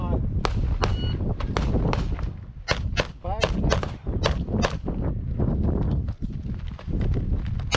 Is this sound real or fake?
real